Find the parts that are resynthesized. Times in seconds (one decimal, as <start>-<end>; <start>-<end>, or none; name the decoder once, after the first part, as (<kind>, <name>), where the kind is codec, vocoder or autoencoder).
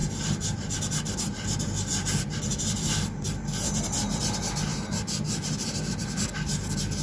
0.0-4.2 (vocoder, BigVGAN v2); 4.7-6.2